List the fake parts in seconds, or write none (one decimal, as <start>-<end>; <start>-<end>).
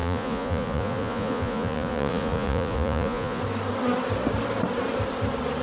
0.0-3.4